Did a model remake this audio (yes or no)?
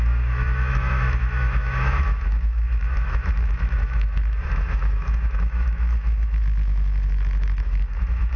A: yes